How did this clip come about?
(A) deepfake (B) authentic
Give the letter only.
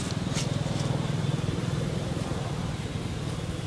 B